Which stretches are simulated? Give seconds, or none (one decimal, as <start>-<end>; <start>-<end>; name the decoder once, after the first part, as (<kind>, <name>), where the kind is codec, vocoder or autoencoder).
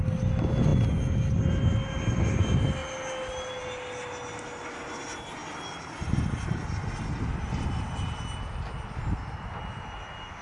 none